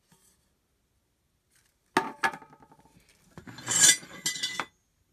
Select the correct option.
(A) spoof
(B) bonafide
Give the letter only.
B